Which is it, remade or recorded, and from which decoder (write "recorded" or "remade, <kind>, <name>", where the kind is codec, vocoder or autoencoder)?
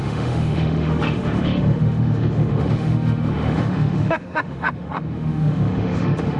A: remade, autoencoder, DAC-VAE